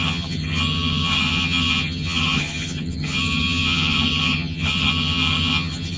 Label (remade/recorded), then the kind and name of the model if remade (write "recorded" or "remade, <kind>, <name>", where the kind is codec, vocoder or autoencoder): remade, vocoder, HiFi-GAN